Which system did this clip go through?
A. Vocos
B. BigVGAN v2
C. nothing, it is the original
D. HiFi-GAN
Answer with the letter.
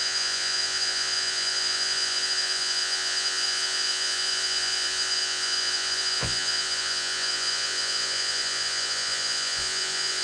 A